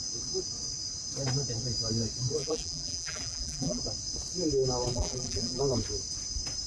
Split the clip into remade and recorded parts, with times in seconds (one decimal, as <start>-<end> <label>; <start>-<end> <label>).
0.0-2.4 recorded; 2.4-3.8 remade; 3.8-4.9 recorded; 4.9-5.6 remade; 5.6-6.7 recorded